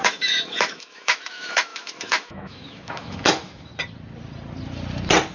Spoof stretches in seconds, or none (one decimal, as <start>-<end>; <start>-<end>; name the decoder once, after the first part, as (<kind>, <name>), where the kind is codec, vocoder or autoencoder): 0.0-3.7 (autoencoder, DAC-VAE)